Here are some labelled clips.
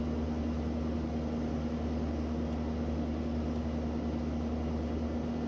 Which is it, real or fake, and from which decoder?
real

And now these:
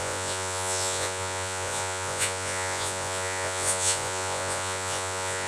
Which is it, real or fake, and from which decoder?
fake, vocoder, Vocos